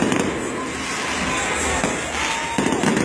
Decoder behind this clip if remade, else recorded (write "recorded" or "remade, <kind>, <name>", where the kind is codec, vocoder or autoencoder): recorded